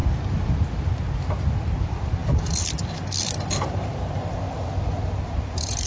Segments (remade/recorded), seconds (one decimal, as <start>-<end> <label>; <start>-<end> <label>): 0.0-1.8 recorded; 1.8-5.9 remade